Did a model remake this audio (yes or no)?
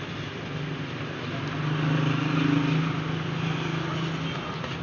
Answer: no